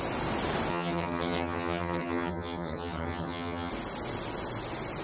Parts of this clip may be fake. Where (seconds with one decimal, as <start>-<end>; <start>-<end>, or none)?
0.7-3.7